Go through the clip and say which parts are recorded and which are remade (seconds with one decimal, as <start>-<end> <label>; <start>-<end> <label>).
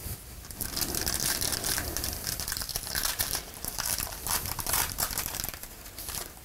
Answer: 0.0-2.2 recorded; 2.2-6.4 remade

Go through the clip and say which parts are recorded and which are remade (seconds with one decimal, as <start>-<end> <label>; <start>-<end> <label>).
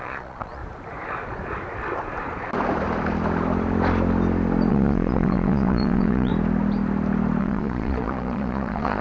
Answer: 0.0-0.6 remade; 0.6-4.7 recorded; 4.7-6.3 remade; 6.3-7.4 recorded; 7.4-9.0 remade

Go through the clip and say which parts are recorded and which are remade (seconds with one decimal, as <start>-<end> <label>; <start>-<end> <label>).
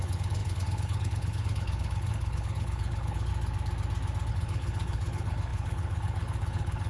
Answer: 0.0-3.3 remade; 3.3-4.3 recorded; 4.3-6.9 remade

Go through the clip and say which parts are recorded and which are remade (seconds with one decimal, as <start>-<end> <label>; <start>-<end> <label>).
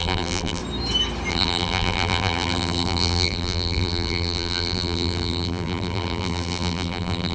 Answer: 0.0-0.6 remade; 0.6-1.3 recorded; 1.3-7.3 remade